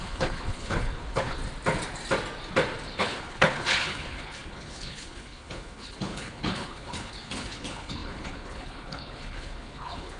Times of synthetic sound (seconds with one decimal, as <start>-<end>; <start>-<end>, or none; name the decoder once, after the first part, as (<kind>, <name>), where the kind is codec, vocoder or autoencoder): 0.0-1.4 (codec, HILCodec); 3.0-10.2